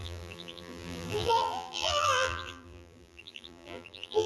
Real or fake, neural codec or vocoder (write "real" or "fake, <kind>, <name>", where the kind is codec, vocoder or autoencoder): fake, vocoder, BigVGAN v2